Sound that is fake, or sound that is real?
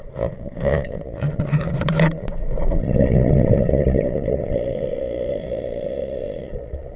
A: fake